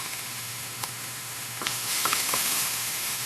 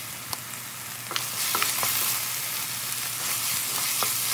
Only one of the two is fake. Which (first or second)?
first